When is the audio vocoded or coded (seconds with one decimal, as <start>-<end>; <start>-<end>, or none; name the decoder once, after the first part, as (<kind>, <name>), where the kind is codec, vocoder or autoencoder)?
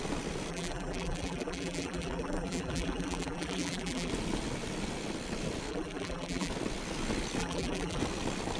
0.5-4.1 (vocoder, BigVGAN v2); 5.7-6.5; 7.4-8.0